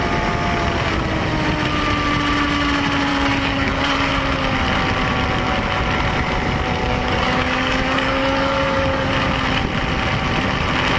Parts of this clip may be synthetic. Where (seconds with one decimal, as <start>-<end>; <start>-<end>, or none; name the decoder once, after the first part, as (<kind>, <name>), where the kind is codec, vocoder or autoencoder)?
3.1-4.1 (codec, DAC); 6.8-9.1